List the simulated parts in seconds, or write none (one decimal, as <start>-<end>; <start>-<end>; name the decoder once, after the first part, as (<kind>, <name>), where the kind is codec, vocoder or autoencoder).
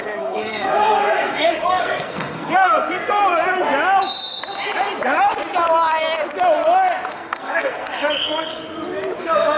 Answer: 0.0-3.2 (codec, SNAC); 7.1-8.6; 9.2-9.6